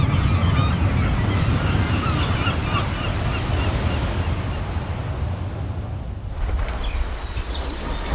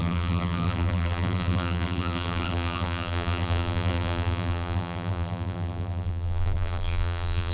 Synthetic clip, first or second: second